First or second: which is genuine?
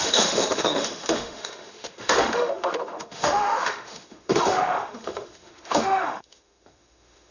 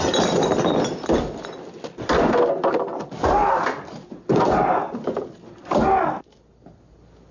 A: second